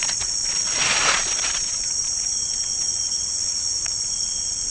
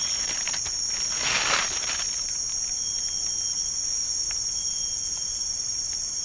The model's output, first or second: first